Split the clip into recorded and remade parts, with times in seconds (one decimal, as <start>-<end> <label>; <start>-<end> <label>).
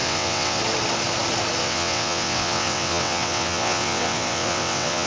0.0-0.6 remade; 0.6-1.6 recorded; 1.6-5.1 remade